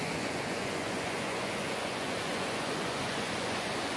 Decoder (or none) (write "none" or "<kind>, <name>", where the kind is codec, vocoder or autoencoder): vocoder, Vocos